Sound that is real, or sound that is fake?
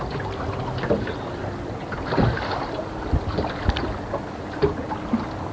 real